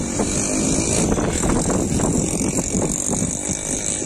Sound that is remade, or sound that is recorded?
recorded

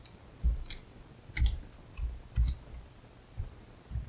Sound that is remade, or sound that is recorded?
recorded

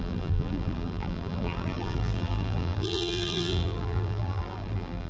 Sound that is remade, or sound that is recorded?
remade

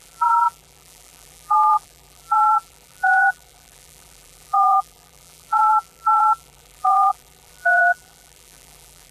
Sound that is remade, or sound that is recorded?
remade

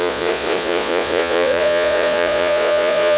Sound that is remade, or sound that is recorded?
remade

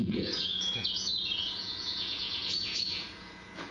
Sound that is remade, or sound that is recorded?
remade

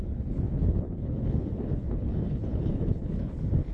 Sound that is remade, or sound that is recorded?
remade